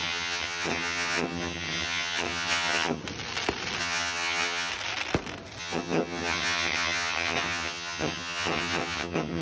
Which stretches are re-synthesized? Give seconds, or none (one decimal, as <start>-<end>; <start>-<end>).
0.0-3.0; 3.8-4.7; 5.6-9.4

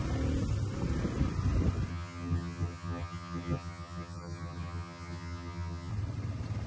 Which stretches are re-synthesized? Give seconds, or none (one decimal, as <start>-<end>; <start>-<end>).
1.9-5.9